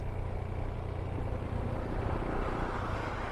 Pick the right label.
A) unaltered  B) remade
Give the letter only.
A